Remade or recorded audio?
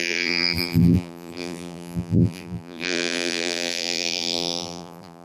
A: remade